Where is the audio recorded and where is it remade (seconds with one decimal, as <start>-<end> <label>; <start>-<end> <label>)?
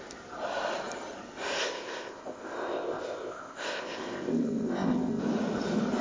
0.0-1.6 recorded; 1.6-5.2 remade; 5.2-6.0 recorded